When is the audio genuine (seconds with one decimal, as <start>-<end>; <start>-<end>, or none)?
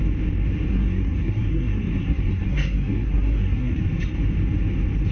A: 0.0-0.7; 3.8-5.1